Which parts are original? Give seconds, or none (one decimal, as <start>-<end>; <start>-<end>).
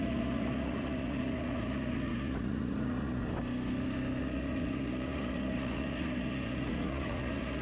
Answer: 3.2-4.2